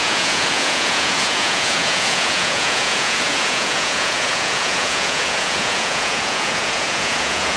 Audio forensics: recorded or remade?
remade